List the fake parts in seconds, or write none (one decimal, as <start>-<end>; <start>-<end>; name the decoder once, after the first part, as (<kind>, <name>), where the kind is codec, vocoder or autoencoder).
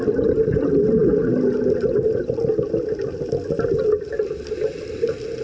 none